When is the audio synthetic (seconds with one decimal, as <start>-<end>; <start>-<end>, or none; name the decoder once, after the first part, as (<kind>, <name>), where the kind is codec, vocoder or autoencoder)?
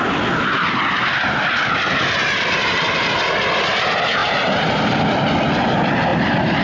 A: 6.1-6.6 (vocoder, BigVGAN v2)